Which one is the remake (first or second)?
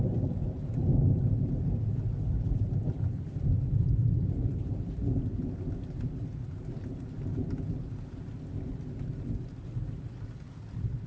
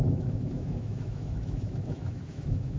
second